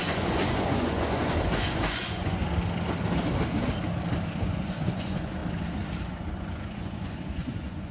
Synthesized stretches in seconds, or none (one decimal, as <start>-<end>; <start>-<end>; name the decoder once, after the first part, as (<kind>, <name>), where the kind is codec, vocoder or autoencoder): 0.0-2.4 (vocoder, Vocos); 4.4-5.4; 6.0-7.9